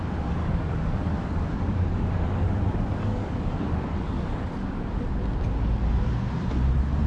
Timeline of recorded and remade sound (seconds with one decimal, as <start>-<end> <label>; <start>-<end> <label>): 0.0-0.4 recorded; 0.4-4.7 remade; 4.7-7.1 recorded